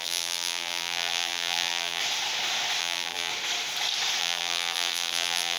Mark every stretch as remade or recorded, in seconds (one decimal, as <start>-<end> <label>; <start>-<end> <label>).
0.0-2.0 remade; 2.0-2.8 recorded; 2.8-3.3 remade; 3.3-4.2 recorded; 4.2-5.6 remade